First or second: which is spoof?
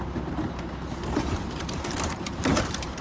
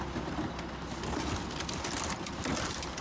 first